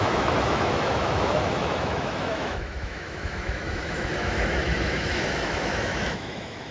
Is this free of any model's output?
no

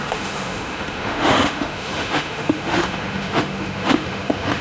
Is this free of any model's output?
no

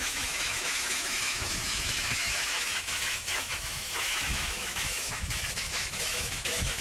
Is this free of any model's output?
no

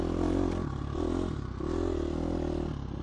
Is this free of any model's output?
yes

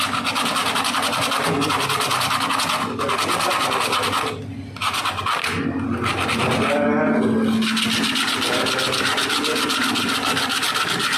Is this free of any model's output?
yes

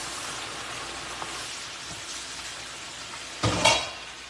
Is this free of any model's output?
yes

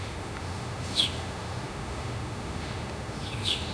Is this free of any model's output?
no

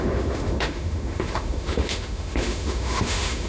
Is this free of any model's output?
no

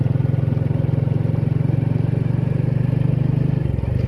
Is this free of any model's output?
yes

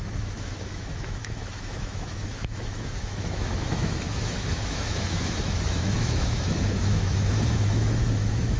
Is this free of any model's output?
no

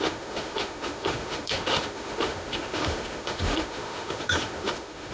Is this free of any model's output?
no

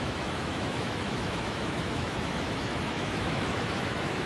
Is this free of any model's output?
no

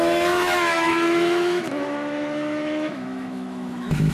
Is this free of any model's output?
no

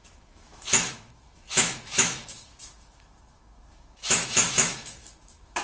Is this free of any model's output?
no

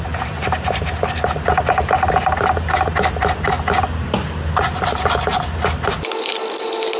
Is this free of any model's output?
yes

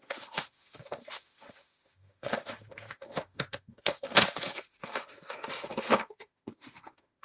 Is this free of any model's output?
no